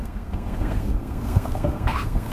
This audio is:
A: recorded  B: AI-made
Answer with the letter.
B